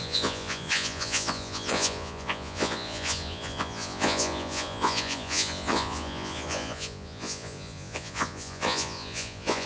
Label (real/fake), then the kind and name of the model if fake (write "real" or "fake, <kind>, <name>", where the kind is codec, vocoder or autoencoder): fake, vocoder, Vocos